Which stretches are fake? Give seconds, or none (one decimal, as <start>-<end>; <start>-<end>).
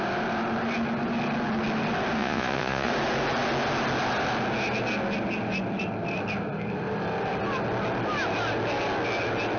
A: 2.2-2.9